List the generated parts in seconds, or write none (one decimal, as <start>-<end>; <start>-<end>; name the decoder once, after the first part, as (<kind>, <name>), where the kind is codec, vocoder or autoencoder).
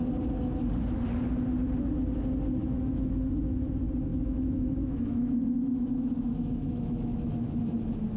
2.6-3.1 (autoencoder, DAC-VAE); 4.1-7.6